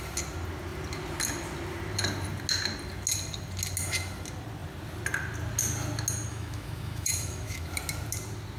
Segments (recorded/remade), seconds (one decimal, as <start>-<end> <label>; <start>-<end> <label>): 0.0-6.3 recorded; 6.3-7.7 remade; 7.7-8.6 recorded